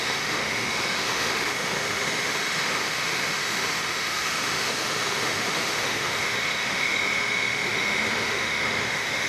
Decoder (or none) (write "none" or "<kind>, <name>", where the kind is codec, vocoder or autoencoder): autoencoder, DAC-VAE